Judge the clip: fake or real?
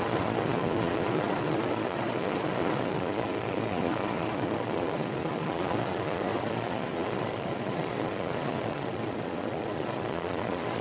fake